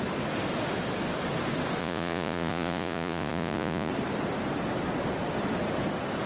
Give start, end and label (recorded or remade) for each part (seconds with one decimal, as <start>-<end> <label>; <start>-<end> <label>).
0.0-1.8 recorded; 1.8-3.9 remade; 3.9-6.3 recorded